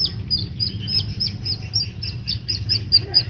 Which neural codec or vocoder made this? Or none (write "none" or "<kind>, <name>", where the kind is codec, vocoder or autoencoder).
vocoder, BigVGAN v2